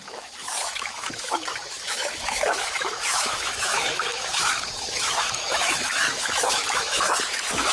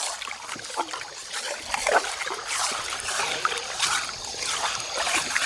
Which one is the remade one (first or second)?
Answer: first